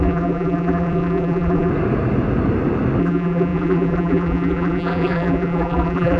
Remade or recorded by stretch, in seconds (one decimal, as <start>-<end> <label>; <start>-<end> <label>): 0.0-1.7 remade; 1.7-3.0 recorded; 3.0-6.2 remade